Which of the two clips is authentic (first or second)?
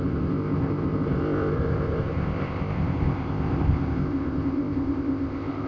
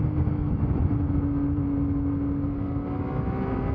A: second